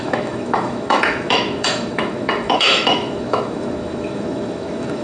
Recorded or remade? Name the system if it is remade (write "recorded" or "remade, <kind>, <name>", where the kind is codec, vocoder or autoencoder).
remade, autoencoder, DAC-VAE